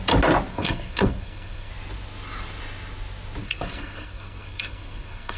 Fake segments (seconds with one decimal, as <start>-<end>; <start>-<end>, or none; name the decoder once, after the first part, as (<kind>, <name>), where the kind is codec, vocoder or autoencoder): 0.5-1.7 (codec, SNAC); 3.4-5.4